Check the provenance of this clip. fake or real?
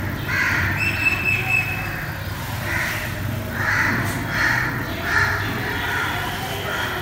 real